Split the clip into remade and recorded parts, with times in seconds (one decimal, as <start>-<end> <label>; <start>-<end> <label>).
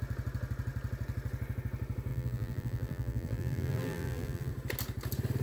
0.0-2.1 recorded; 2.1-4.5 remade; 4.5-5.4 recorded